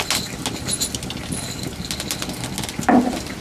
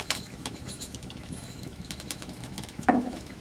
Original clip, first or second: first